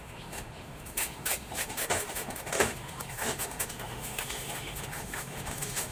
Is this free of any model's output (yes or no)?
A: no